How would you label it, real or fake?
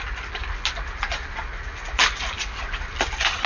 real